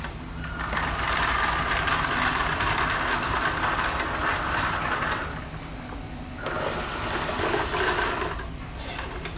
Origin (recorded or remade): recorded